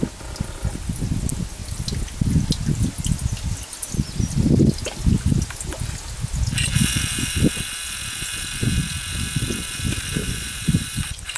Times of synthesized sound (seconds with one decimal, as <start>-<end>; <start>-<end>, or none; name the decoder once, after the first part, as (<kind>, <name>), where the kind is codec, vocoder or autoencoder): 10.2-11.4 (vocoder, Vocos)